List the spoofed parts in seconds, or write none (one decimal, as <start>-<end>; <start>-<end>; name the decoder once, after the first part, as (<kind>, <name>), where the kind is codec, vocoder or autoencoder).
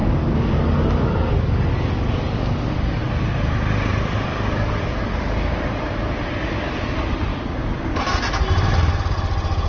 0.0-3.0 (codec, DAC); 4.3-5.6